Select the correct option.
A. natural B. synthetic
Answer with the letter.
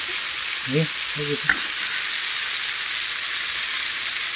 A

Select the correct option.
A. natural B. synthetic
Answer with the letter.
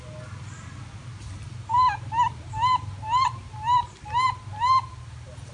A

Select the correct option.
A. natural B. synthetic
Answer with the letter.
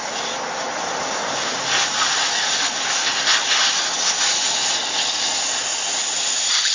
A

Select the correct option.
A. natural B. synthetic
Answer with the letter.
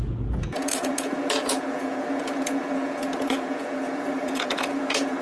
B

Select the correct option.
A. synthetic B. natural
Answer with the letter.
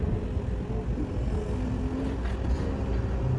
B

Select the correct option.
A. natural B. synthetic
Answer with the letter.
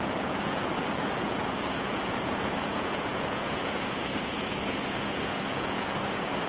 B